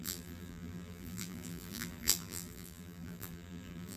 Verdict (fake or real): fake